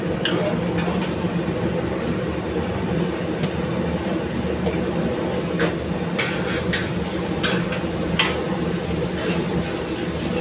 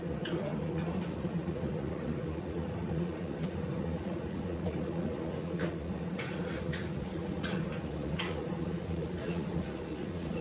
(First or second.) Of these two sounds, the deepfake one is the second